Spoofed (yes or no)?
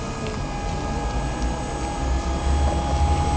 no